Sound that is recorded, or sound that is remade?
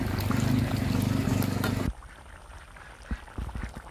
recorded